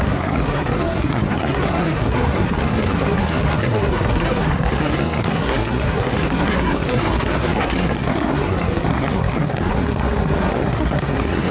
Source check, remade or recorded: remade